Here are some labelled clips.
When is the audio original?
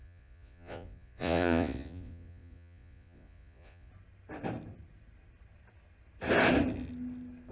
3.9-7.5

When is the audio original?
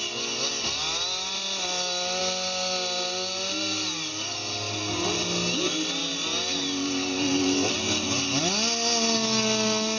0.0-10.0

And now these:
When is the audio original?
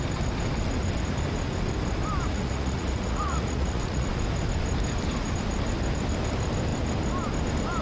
0.0-2.3; 4.1-7.8